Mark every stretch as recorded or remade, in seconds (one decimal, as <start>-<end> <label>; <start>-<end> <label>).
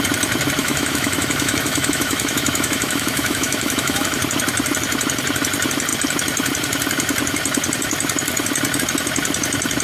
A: 0.0-0.6 recorded; 0.6-4.2 remade; 4.2-9.8 recorded